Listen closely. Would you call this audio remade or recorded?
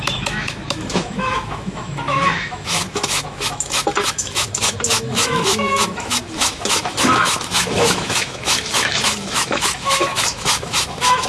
remade